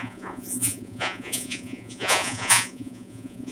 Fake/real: fake